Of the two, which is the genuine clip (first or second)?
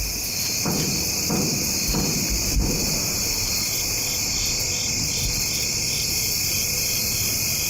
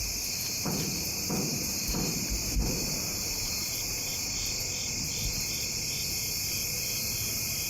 first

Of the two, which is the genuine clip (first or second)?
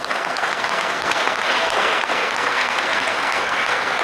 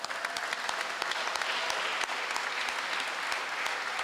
second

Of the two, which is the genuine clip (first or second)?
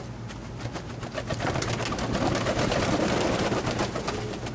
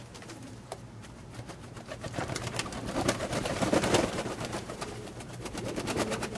first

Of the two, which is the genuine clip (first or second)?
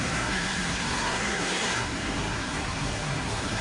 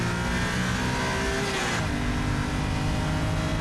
second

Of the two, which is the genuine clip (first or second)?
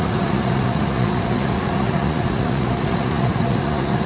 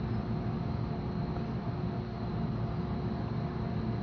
second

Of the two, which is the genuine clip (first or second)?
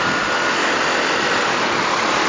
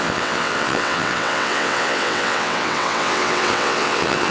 first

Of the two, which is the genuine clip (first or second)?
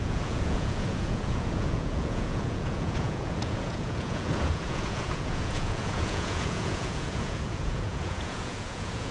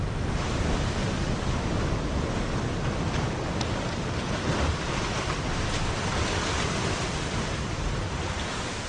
second